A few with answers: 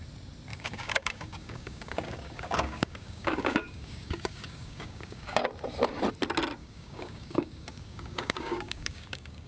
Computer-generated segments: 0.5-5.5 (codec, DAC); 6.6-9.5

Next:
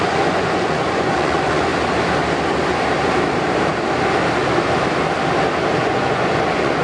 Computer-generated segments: 0.0-1.7 (vocoder, Vocos); 5.8-6.8

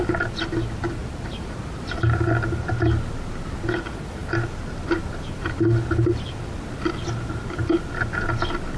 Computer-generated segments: 1.0-1.9 (vocoder, BigVGAN v2)

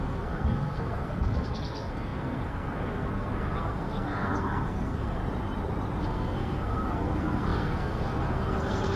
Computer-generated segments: 0.0-5.2 (codec, SNAC); 6.0-9.0

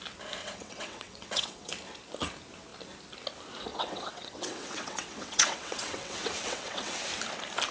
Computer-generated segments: 0.4-1.7 (vocoder, WaveNeXt); 3.7-7.0